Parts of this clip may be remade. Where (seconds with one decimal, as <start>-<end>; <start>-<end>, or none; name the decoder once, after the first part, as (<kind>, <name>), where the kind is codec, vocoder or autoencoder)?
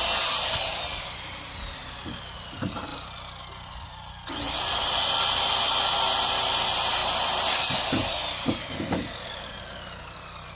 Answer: 8.6-9.5 (codec, DAC)